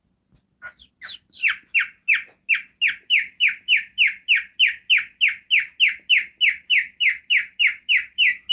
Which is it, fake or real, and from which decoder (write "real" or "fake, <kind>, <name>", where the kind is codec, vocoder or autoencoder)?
real